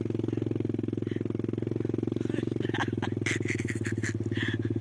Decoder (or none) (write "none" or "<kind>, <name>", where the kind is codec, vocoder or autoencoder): none